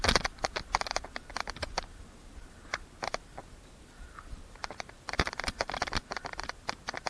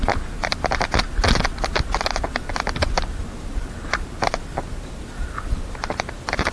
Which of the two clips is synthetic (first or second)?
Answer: first